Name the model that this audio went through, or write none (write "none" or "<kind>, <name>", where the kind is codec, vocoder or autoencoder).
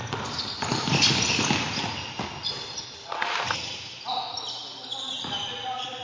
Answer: none